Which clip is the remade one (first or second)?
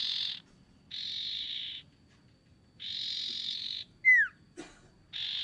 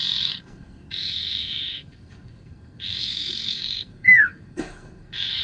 second